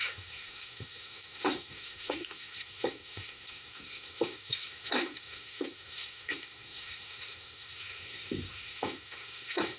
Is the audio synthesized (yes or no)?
yes